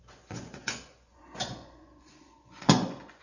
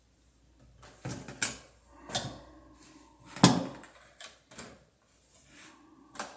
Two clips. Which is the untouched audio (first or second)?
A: second